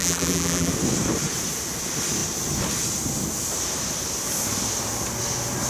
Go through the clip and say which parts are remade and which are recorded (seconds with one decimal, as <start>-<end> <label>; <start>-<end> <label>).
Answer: 0.0-0.7 remade; 0.7-5.7 recorded